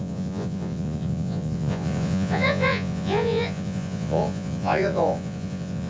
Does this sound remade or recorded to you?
remade